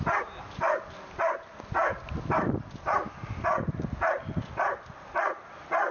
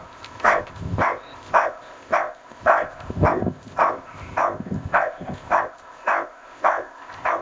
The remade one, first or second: second